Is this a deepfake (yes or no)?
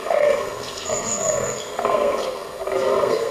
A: yes